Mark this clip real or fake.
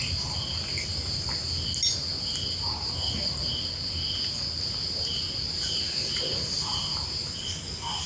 real